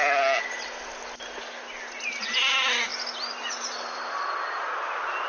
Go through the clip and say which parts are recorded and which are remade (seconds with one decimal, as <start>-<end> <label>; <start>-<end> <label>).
0.0-5.3 recorded

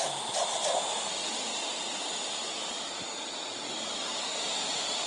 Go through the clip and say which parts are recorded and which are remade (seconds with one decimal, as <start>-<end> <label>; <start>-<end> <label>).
0.0-5.1 recorded

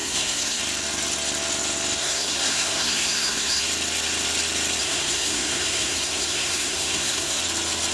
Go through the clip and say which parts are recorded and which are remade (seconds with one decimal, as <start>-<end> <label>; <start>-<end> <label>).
0.0-0.6 remade; 0.6-2.0 recorded; 2.0-3.6 remade; 3.6-4.8 recorded; 4.8-7.4 remade; 7.4-7.9 recorded

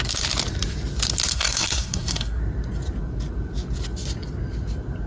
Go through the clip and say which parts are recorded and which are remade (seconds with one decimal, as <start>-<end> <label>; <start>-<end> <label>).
0.0-1.3 recorded; 1.3-2.4 remade; 2.4-5.1 recorded

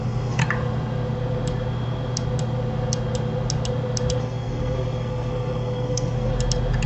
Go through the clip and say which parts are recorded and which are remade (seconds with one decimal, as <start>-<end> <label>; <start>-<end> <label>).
0.0-0.4 remade; 0.4-4.2 recorded; 4.2-6.3 remade; 6.3-6.9 recorded